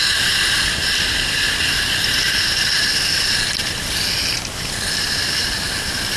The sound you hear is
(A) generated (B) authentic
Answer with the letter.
B